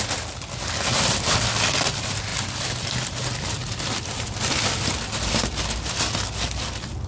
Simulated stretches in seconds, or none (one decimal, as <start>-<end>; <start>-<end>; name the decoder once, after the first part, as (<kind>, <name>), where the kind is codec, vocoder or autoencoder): none